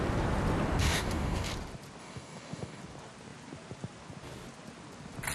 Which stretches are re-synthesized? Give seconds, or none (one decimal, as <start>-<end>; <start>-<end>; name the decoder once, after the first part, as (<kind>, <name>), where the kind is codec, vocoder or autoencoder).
0.8-1.5 (codec, DAC); 2.0-2.8